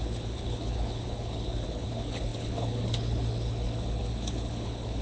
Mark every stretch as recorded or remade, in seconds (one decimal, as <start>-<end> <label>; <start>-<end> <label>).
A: 0.0-5.0 remade